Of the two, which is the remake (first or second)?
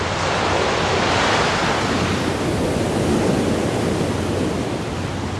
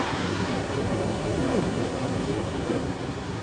second